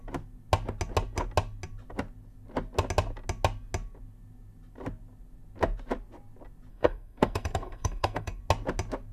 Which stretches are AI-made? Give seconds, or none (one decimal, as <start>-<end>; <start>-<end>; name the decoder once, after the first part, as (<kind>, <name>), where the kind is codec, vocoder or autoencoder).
6.7-8.4 (codec, SNAC)